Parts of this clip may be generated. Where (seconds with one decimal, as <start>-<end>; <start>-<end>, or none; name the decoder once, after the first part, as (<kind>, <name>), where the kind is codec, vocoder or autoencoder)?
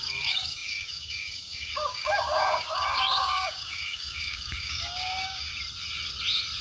0.0-5.5 (codec, DAC)